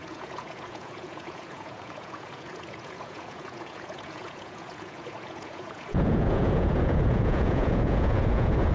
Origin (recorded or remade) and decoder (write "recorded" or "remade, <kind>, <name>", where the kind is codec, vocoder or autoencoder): remade, vocoder, Vocos